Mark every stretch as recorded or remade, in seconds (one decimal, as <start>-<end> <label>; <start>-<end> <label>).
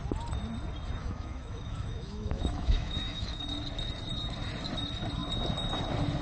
0.0-1.0 recorded; 1.0-3.4 remade; 3.4-6.2 recorded